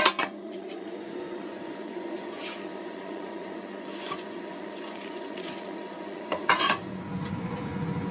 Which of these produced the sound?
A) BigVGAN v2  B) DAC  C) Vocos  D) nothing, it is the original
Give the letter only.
C